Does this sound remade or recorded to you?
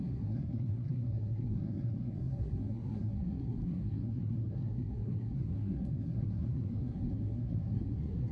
remade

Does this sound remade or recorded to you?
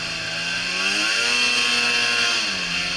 recorded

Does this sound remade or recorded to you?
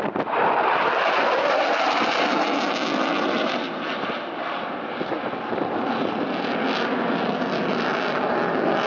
recorded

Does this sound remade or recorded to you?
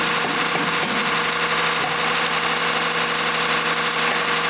recorded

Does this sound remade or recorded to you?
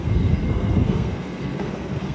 remade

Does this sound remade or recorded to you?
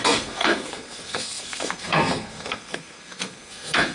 remade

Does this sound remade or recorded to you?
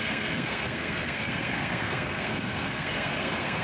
remade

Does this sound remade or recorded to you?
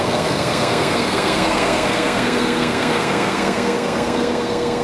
remade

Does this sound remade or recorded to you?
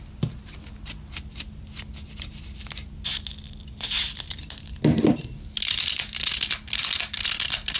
recorded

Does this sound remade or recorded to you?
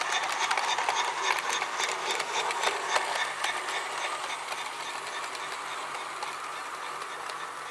recorded